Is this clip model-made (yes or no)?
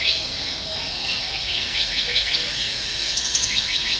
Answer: yes